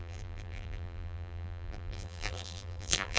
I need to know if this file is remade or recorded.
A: remade